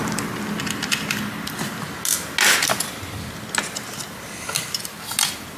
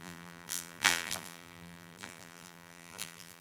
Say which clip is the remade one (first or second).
second